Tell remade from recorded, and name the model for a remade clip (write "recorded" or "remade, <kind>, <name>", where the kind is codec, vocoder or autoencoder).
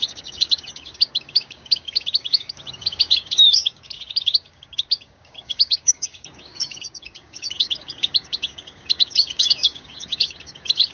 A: remade, codec, DAC